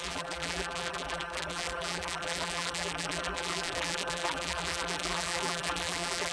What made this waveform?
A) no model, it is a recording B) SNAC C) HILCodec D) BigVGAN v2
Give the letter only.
D